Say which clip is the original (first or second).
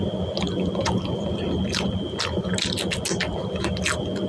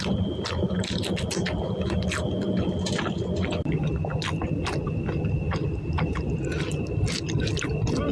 first